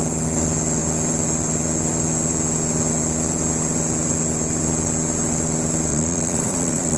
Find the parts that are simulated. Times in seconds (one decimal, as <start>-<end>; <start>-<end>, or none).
5.9-7.0